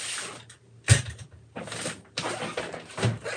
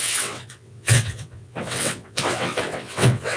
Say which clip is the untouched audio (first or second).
first